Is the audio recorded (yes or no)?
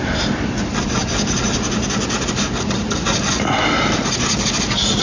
yes